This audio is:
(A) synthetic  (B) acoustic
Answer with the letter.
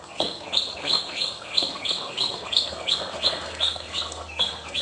A